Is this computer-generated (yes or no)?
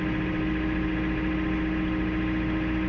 no